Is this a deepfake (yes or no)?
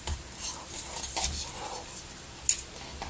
no